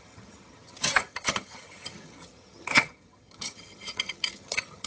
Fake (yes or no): yes